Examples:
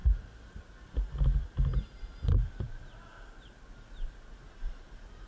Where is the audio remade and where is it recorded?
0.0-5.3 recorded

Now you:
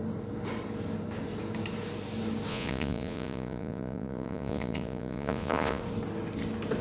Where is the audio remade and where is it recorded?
0.0-2.5 recorded; 2.5-5.8 remade; 5.8-6.8 recorded

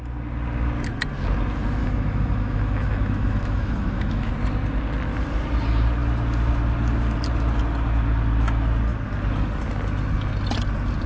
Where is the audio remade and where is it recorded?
0.0-1.8 recorded; 1.8-4.3 remade; 4.3-11.1 recorded

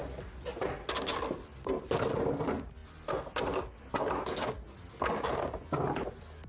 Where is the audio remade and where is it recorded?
0.0-6.5 recorded

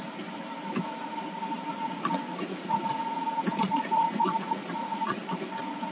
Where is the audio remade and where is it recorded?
0.0-1.7 recorded; 1.7-5.2 remade; 5.2-5.9 recorded

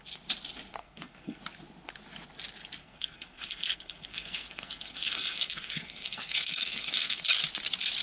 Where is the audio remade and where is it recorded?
0.0-0.8 recorded; 0.8-1.4 remade; 1.4-2.8 recorded; 2.8-7.2 remade; 7.2-8.0 recorded

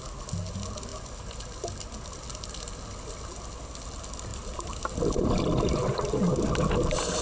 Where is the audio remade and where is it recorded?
0.0-4.3 recorded; 4.3-5.4 remade; 5.4-7.2 recorded